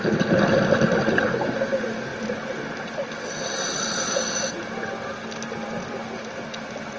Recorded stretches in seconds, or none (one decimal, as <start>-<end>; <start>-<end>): 0.0-7.0